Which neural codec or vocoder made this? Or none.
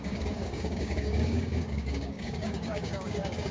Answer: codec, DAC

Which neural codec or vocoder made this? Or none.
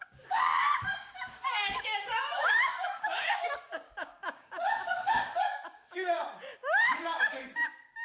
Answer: codec, DAC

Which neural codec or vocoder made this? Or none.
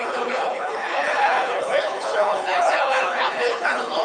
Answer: codec, HILCodec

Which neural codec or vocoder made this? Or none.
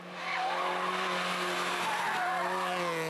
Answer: none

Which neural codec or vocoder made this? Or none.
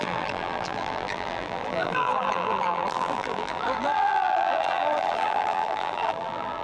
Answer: vocoder, BigVGAN v2